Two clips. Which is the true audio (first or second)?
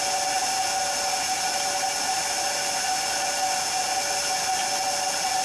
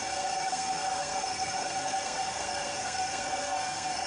first